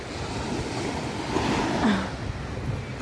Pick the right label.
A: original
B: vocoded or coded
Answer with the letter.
A